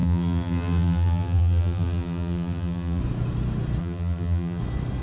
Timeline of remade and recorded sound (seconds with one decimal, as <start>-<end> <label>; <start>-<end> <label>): 0.0-3.0 remade; 3.0-3.8 recorded; 3.8-4.6 remade; 4.6-5.0 recorded